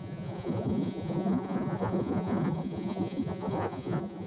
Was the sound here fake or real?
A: fake